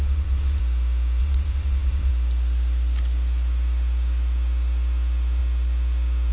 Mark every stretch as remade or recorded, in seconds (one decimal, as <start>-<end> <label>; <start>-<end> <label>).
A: 0.0-0.6 remade; 0.6-1.2 recorded; 1.2-2.1 remade; 2.1-6.3 recorded